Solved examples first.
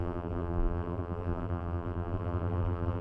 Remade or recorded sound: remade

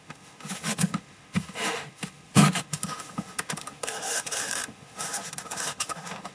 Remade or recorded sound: remade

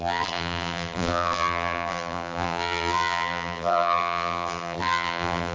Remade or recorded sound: remade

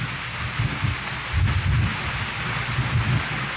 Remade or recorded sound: recorded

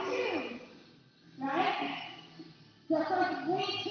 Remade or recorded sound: recorded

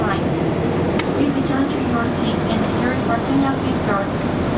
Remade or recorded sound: recorded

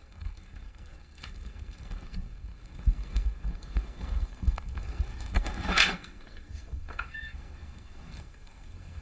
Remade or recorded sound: remade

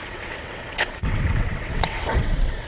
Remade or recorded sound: remade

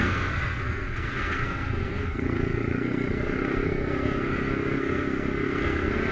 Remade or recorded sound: remade